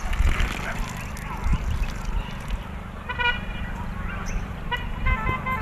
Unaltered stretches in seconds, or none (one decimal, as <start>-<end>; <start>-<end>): 0.0-1.5; 4.9-5.6